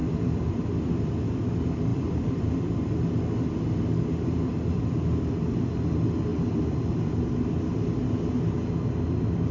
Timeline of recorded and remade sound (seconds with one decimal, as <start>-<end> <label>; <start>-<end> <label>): 0.0-1.1 remade; 1.1-1.9 recorded; 1.9-2.5 remade; 2.5-4.5 recorded; 4.5-5.6 remade; 5.6-6.3 recorded; 6.3-8.1 remade; 8.1-9.5 recorded